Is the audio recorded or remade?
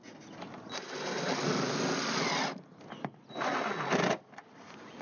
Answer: recorded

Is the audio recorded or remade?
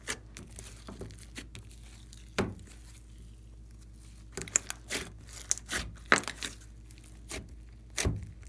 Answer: recorded